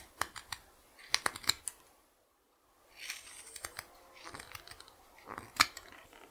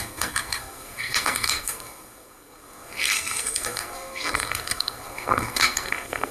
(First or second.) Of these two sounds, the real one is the first